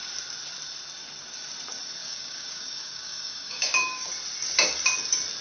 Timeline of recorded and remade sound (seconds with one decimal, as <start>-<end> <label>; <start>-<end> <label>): 0.0-2.0 recorded; 2.0-4.1 remade; 4.1-5.4 recorded